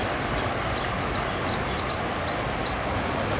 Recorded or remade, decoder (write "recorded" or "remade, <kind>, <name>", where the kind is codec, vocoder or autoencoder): recorded